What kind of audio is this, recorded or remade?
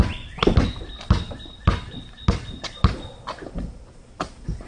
recorded